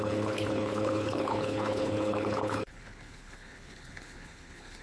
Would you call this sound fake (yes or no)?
yes